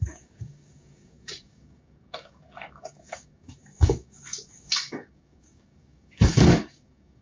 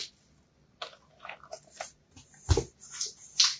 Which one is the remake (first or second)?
first